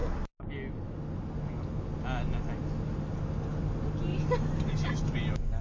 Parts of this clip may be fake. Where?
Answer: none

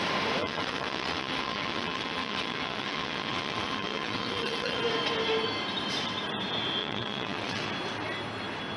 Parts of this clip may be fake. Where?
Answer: 0.4-4.8; 6.8-7.7

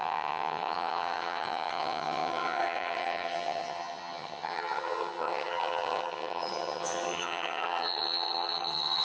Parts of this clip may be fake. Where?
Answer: 0.0-9.0

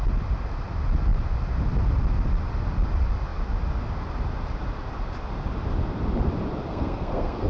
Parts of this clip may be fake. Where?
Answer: 6.7-7.5

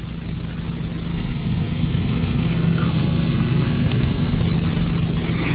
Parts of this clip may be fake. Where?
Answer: 1.1-4.4

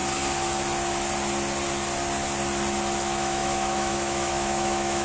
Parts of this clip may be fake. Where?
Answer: 3.0-5.0

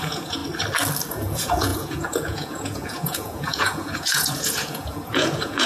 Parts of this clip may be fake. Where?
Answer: 0.0-0.4; 1.1-5.7